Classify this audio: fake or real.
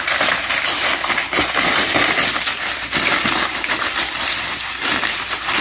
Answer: fake